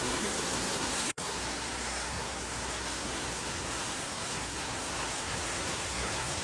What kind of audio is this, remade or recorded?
remade